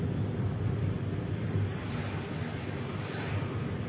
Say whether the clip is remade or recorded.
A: recorded